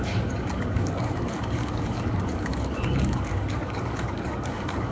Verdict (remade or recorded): remade